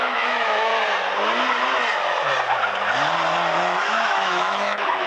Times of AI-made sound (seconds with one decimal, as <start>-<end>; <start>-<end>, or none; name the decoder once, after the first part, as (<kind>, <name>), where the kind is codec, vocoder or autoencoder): 0.0-0.7 (autoencoder, DAC-VAE); 3.8-5.1